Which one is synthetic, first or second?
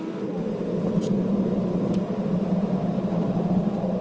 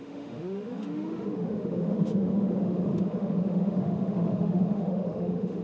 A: second